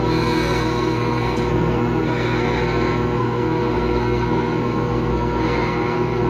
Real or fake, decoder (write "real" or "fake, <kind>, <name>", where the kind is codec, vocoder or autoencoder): fake, codec, SNAC